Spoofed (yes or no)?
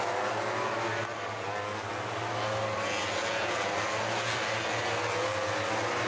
no